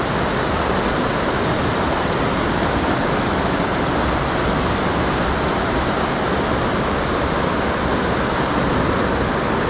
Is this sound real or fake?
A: real